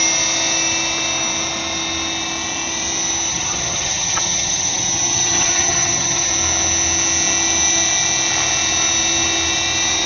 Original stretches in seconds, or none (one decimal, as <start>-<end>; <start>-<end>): 0.0-3.3; 6.3-10.1